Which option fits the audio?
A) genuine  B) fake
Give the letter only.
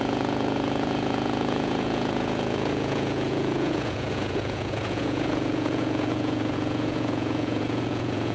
B